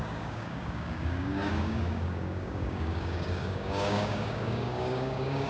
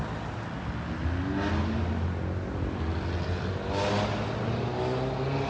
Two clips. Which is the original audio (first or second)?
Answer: second